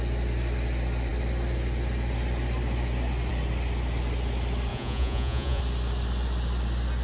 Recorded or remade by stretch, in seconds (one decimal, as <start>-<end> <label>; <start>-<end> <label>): 0.0-4.7 recorded; 4.7-5.6 remade; 5.6-7.0 recorded